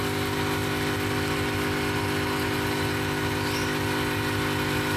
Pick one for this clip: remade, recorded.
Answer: recorded